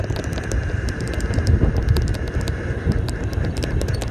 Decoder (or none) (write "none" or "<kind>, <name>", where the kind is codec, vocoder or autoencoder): none